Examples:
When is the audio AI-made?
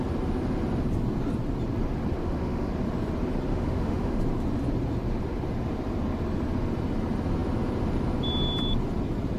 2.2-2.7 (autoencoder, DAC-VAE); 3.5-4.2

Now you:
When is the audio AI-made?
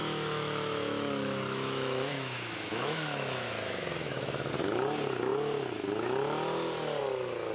0.0-4.5 (autoencoder, DAC-VAE)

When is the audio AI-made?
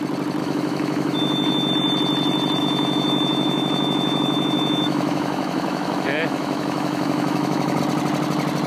0.4-1.7 (autoencoder, DAC-VAE); 2.6-7.8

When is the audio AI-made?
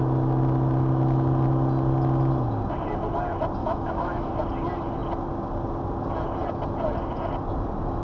3.6-4.3 (autoencoder, DAC-VAE)